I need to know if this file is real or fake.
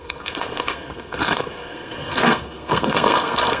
fake